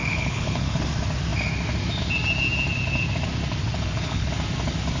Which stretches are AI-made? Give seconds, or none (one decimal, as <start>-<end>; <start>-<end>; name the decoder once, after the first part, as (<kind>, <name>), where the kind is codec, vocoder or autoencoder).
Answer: 0.0-0.8 (codec, HILCodec); 3.6-4.3